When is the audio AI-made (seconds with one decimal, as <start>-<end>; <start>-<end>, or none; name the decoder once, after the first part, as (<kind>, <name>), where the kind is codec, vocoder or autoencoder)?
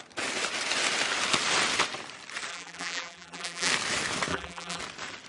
2.5-3.7 (vocoder, BigVGAN v2); 4.3-4.8